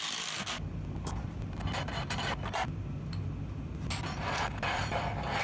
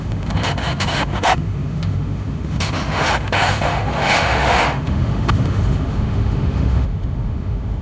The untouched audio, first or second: first